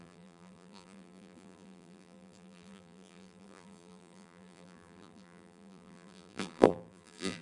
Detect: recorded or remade remade